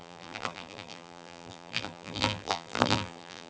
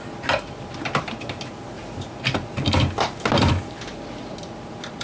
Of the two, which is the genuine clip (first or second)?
second